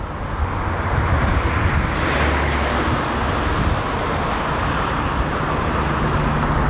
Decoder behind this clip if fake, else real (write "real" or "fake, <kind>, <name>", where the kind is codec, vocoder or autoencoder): real